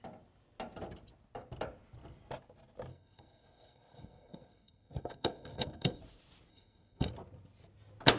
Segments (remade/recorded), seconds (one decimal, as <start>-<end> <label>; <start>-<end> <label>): 0.0-2.9 recorded; 2.9-6.0 remade; 6.0-6.5 recorded; 6.5-7.1 remade; 7.1-8.2 recorded

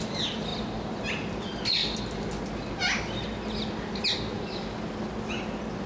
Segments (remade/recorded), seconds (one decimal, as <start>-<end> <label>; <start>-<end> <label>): 0.0-5.9 recorded

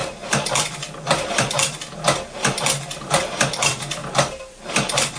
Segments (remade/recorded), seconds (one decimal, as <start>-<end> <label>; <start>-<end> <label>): 0.0-5.2 remade

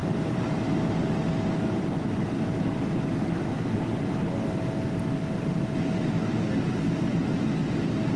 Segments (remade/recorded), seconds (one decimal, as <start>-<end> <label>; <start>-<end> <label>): 0.0-8.2 recorded

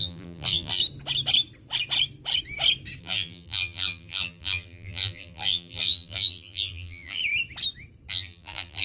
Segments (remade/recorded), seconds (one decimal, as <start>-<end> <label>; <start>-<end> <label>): 0.0-0.8 remade; 0.8-3.0 recorded; 3.0-7.2 remade; 7.2-8.1 recorded; 8.1-8.8 remade

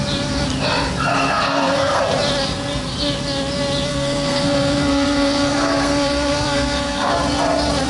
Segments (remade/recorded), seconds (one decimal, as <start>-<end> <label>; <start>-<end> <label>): 0.0-1.1 recorded; 1.1-2.0 remade; 2.0-3.9 recorded; 3.9-7.2 remade; 7.2-7.9 recorded